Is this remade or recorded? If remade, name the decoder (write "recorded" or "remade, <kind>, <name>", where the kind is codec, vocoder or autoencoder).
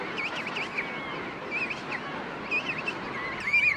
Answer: recorded